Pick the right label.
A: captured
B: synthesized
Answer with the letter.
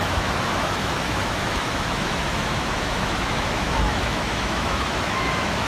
B